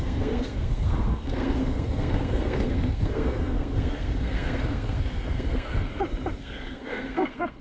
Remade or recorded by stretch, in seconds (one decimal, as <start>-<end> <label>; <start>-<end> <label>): 0.0-5.9 remade; 5.9-6.4 recorded; 6.4-7.6 remade